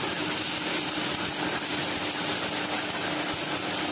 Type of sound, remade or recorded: recorded